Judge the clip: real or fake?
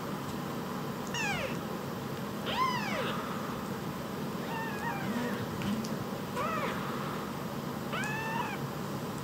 real